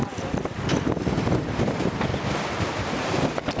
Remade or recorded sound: recorded